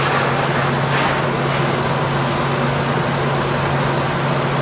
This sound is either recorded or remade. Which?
recorded